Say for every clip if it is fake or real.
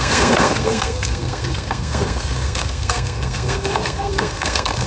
fake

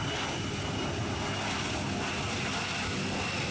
real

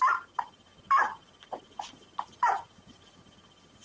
real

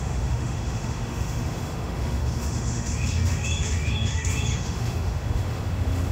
fake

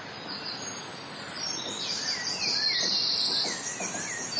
real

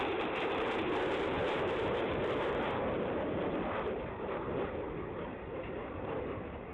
fake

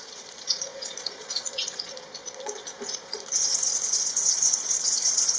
fake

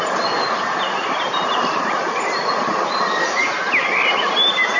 real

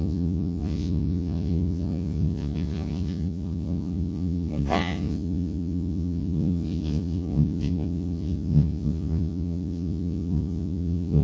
fake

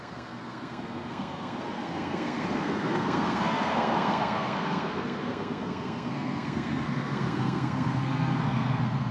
fake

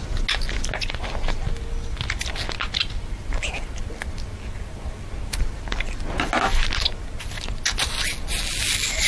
real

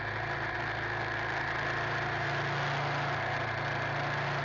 real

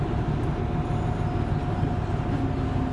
real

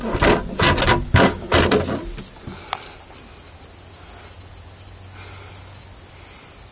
real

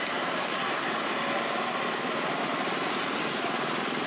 real